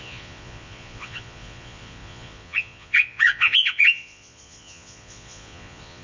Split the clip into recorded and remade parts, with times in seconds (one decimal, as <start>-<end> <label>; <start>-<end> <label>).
0.0-6.0 remade